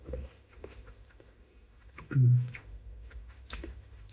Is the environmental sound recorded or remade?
remade